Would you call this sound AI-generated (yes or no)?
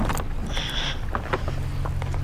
no